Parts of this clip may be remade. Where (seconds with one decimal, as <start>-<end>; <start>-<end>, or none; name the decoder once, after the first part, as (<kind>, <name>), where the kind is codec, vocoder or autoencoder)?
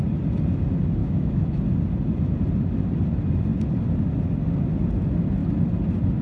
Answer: 1.0-1.6 (autoencoder, DAC-VAE)